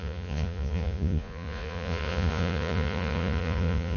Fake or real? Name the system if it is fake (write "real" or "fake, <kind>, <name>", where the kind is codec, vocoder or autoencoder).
fake, vocoder, Vocos